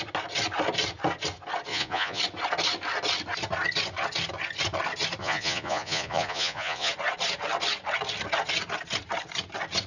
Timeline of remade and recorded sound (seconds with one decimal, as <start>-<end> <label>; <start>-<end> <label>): 0.0-1.7 recorded; 1.7-2.2 remade; 2.2-5.2 recorded; 5.2-6.9 remade; 6.9-9.9 recorded